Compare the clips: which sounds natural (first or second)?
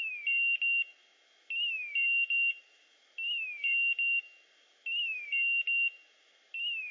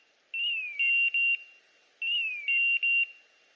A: second